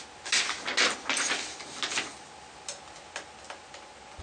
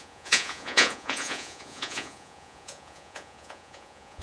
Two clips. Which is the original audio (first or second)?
first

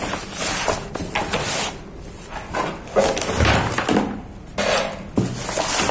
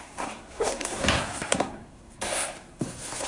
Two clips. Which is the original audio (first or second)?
first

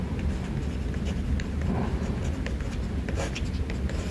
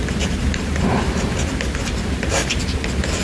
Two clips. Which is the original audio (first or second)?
first